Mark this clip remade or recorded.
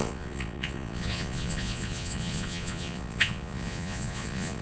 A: remade